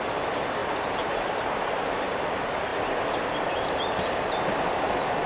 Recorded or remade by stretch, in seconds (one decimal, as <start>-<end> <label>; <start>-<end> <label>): 0.0-0.6 recorded; 0.6-2.2 remade; 2.2-5.3 recorded